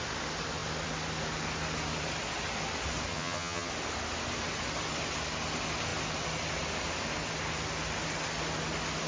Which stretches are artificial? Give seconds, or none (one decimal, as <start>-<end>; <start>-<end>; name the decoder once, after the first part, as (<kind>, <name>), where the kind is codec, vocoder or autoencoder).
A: 3.1-3.7 (vocoder, HiFi-GAN)